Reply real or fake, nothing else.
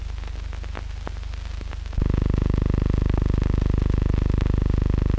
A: real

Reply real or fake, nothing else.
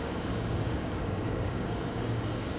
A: fake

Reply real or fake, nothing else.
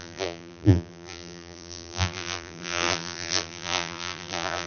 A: fake